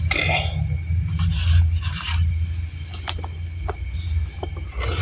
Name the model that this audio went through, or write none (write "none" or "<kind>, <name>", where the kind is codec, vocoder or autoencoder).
none